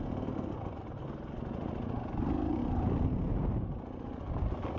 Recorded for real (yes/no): yes